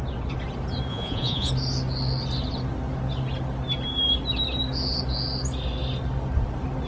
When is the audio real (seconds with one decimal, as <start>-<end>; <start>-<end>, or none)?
0.0-0.9; 1.5-6.9